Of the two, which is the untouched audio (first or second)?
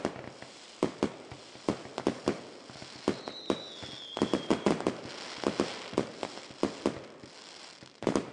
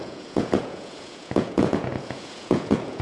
first